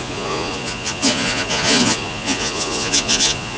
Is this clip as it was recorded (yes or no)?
no